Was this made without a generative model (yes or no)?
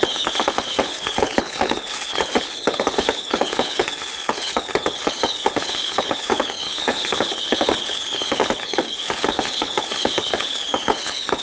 no